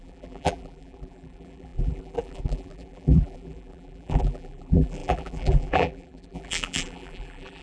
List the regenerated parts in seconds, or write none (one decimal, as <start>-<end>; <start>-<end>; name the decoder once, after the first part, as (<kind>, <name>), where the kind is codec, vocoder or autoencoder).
0.0-7.6 (vocoder, BigVGAN v2)